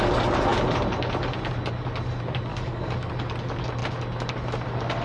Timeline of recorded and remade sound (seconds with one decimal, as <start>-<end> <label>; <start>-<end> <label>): 0.0-2.5 recorded; 2.5-3.1 remade; 3.1-5.0 recorded